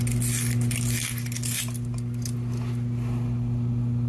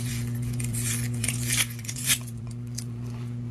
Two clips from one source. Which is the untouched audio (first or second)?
first